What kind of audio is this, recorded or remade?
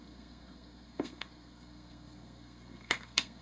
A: remade